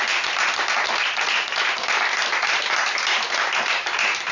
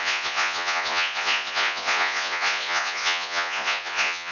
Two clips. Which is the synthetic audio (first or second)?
second